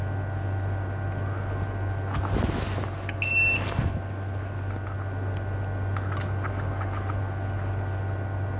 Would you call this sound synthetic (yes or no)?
no